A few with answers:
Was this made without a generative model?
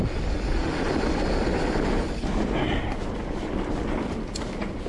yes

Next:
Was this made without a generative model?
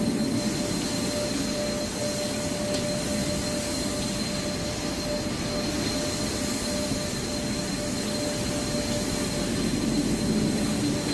yes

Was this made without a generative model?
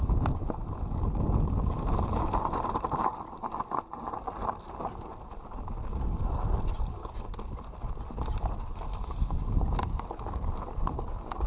yes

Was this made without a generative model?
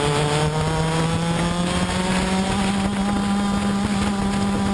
yes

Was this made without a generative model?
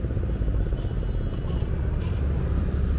yes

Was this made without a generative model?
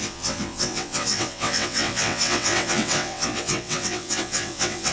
no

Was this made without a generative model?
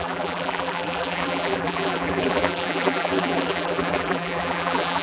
no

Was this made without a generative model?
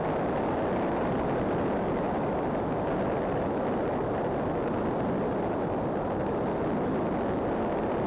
yes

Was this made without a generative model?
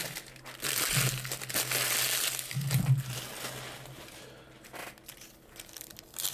yes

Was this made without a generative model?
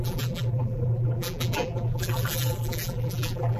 no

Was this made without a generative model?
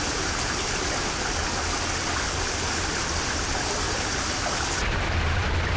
yes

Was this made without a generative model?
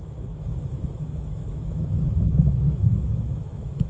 no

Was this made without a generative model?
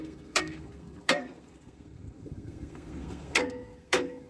no